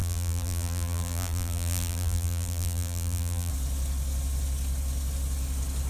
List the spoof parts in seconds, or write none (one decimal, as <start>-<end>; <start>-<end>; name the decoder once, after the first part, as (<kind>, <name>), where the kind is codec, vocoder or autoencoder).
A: 0.0-3.5 (vocoder, BigVGAN v2)